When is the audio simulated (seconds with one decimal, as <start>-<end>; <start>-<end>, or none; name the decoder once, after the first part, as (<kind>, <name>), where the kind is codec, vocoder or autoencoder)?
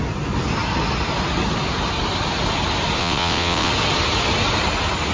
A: 3.0-3.7 (vocoder, WaveNeXt)